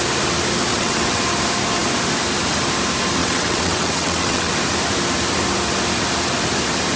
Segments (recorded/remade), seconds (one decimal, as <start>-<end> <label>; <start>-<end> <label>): 0.0-0.7 recorded; 0.7-1.2 remade; 1.2-3.2 recorded; 3.2-4.5 remade; 4.5-7.0 recorded